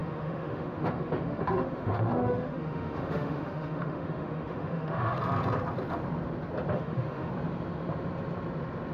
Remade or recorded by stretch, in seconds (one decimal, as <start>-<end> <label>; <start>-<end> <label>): 0.0-5.2 remade; 5.2-6.7 recorded; 6.7-7.3 remade; 7.3-8.9 recorded